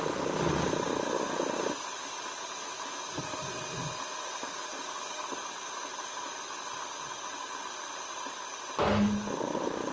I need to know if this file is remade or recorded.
recorded